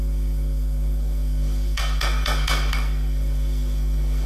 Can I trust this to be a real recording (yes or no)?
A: no